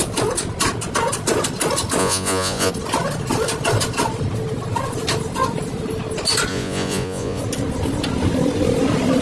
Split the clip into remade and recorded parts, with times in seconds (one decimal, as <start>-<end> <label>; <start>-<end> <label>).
0.0-2.0 recorded; 2.0-2.7 remade; 2.7-6.5 recorded; 6.5-7.4 remade; 7.4-9.2 recorded